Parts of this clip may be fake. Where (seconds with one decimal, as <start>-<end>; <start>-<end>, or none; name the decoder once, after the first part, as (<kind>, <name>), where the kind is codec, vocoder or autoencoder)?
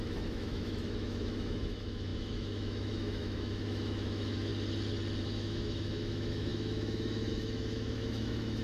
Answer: 0.0-4.5 (autoencoder, DAC-VAE); 5.2-8.6